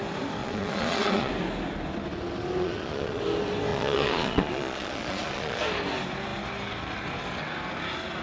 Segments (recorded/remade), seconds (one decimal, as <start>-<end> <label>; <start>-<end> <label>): 0.0-0.4 recorded; 0.4-1.3 remade; 1.3-2.6 recorded; 2.6-3.2 remade; 3.2-3.7 recorded; 3.7-5.6 remade; 5.6-8.2 recorded